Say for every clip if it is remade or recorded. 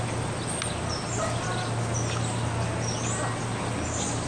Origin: recorded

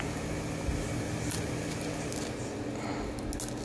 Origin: recorded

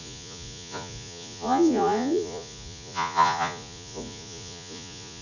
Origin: remade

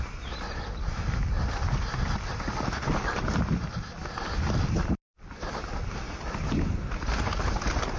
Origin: recorded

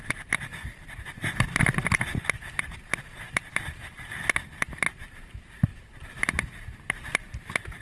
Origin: recorded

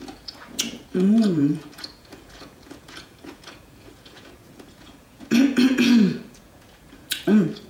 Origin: remade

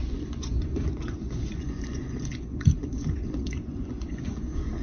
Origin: remade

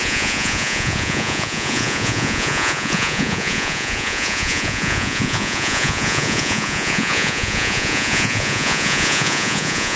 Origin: remade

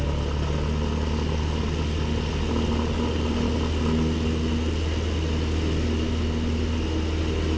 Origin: recorded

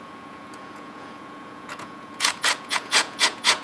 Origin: remade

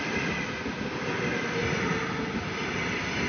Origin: recorded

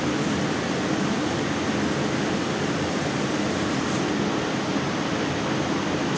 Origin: recorded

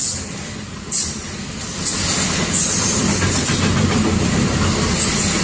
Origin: recorded